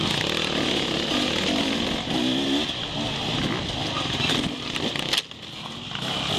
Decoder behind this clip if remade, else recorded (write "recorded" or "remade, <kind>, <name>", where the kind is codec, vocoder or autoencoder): recorded